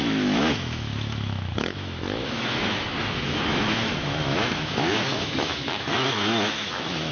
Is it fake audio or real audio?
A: fake